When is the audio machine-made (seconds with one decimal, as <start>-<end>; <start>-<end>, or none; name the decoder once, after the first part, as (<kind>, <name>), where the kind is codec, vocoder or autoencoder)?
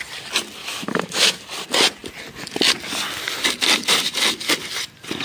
0.6-1.4 (autoencoder, DAC-VAE)